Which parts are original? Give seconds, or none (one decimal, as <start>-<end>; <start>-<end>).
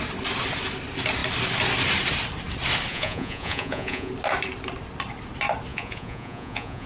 0.0-2.9; 4.1-5.7